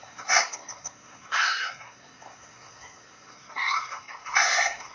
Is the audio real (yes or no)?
no